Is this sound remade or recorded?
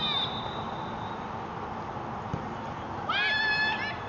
recorded